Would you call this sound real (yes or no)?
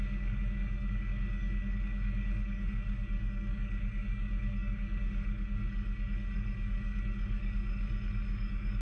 no